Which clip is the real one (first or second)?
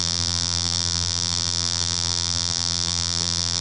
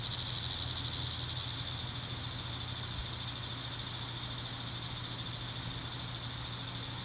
second